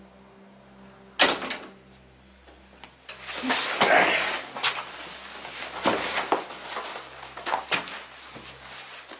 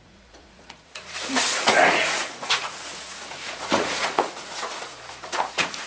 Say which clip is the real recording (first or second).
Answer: first